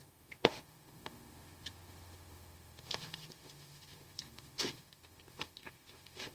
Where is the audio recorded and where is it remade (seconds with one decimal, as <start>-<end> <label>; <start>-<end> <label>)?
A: 0.0-6.3 remade